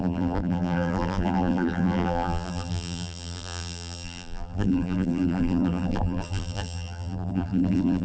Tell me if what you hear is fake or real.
fake